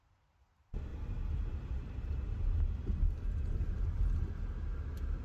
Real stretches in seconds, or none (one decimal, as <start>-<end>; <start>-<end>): 0.0-0.9; 4.0-5.2